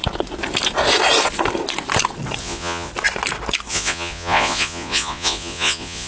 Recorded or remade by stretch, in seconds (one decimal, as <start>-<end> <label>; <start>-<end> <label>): 0.0-2.4 recorded; 2.4-2.9 remade; 2.9-3.7 recorded; 3.7-6.1 remade